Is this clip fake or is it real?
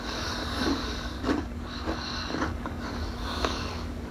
fake